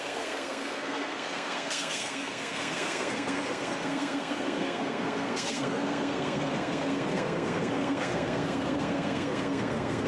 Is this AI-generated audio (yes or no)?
yes